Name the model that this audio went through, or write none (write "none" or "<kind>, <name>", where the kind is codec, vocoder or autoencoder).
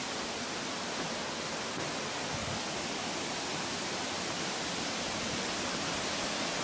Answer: none